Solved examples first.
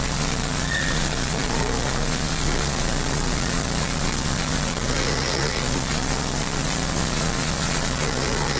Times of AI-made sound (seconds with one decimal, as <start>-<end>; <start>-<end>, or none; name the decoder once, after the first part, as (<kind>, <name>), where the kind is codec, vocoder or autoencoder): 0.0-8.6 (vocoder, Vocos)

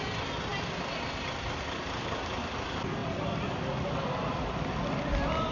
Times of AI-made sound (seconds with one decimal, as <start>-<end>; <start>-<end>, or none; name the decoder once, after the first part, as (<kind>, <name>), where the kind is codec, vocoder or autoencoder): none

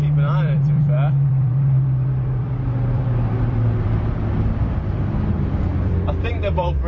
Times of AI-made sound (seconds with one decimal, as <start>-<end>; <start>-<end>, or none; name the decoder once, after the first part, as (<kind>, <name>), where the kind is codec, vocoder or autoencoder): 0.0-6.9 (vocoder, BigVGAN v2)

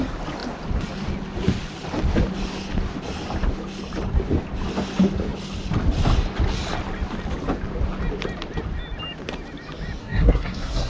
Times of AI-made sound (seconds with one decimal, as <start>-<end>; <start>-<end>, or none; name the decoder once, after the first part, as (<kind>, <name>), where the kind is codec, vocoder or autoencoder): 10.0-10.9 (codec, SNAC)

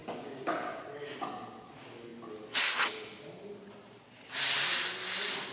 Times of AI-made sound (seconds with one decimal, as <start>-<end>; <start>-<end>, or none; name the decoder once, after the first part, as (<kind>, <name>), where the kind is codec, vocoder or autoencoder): 0.0-0.8 (codec, DAC)

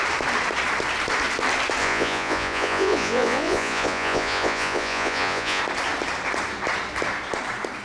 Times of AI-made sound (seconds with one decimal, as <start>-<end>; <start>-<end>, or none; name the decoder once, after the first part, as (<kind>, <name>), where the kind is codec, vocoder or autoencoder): 1.8-5.6 (vocoder, Vocos)

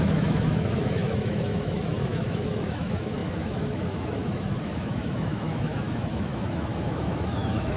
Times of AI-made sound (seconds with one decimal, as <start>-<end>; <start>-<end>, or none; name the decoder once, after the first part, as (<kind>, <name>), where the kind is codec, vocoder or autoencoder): 0.0-7.8 (autoencoder, DAC-VAE)